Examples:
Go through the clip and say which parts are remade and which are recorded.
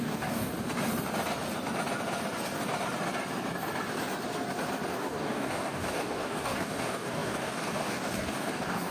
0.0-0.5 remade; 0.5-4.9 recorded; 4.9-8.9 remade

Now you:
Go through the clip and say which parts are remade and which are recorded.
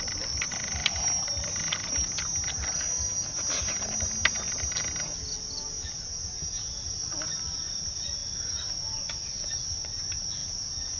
0.0-11.0 recorded